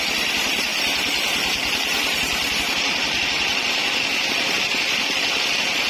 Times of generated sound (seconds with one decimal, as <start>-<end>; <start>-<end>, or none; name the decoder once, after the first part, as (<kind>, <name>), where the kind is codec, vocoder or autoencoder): 0.0-3.8 (vocoder, BigVGAN v2); 4.7-5.9